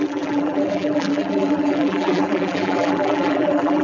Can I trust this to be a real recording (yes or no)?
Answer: no